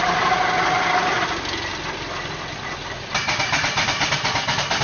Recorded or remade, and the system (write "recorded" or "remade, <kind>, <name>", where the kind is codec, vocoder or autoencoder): recorded